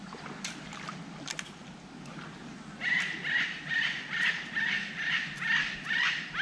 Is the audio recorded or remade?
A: recorded